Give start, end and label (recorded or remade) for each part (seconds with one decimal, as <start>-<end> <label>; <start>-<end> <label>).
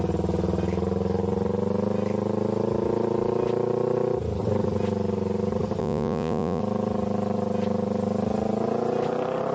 0.0-5.8 recorded; 5.8-6.6 remade; 6.6-9.5 recorded